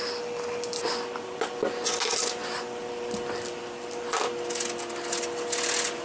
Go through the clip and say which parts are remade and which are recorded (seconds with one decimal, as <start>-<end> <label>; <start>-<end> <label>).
0.0-6.0 recorded